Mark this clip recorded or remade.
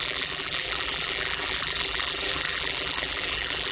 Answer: remade